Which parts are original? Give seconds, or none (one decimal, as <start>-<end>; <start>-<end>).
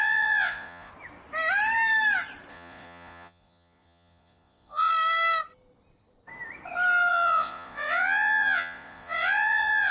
0.9-2.5; 4.9-7.1